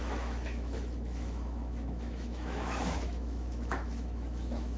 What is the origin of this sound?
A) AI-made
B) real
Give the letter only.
A